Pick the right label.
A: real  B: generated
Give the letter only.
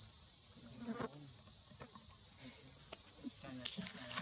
A